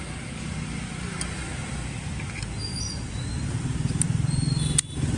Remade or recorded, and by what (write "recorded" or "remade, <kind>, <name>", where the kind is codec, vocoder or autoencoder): recorded